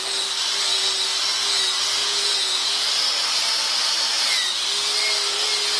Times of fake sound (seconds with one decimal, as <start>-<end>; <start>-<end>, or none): 2.0-2.8